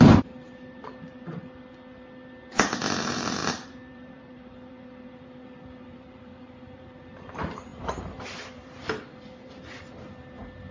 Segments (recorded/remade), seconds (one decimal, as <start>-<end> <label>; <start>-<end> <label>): 0.0-1.4 remade; 1.4-3.0 recorded; 3.0-10.7 remade